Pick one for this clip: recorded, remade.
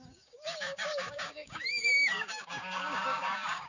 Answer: remade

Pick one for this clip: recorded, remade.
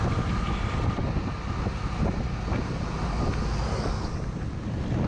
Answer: recorded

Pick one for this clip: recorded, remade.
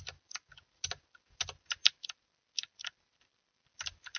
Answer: recorded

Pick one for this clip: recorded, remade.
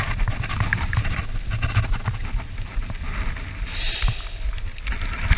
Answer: recorded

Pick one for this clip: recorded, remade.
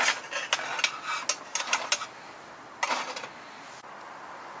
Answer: recorded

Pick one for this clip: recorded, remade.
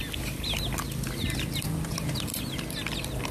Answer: recorded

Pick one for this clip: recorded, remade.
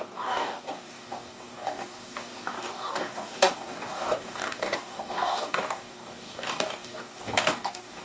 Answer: remade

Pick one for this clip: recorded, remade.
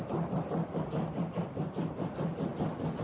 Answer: recorded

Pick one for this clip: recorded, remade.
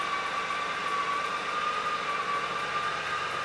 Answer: recorded